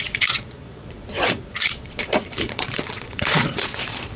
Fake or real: fake